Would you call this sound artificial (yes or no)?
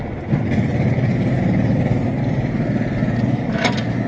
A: no